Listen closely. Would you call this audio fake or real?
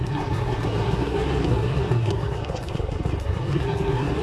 fake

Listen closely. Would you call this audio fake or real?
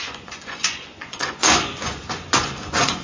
fake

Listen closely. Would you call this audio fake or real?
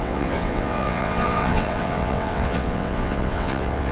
fake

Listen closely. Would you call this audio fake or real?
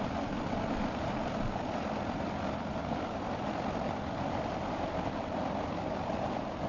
fake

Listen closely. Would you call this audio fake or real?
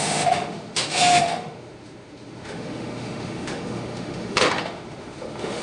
fake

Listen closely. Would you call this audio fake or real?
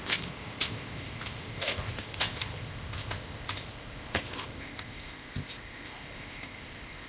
fake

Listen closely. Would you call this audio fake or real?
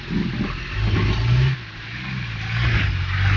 real